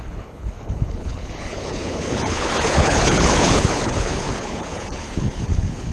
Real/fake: fake